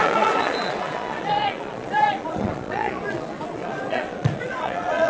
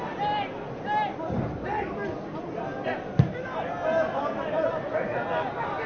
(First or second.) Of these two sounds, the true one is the second